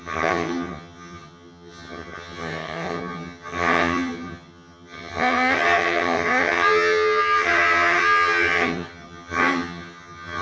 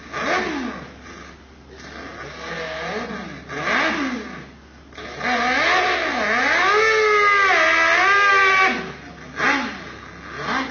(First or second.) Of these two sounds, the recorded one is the second